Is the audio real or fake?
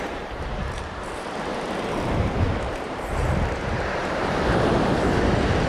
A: fake